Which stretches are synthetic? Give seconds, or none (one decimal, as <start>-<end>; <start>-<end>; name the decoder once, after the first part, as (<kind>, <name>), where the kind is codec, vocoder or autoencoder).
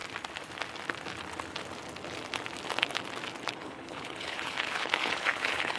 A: 3.5-5.8 (codec, HILCodec)